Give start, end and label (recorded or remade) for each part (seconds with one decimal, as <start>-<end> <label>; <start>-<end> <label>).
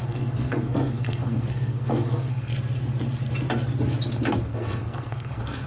0.0-2.5 remade; 2.5-4.4 recorded; 4.4-5.7 remade